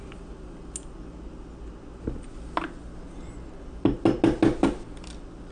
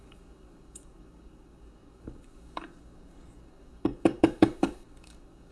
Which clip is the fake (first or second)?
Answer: second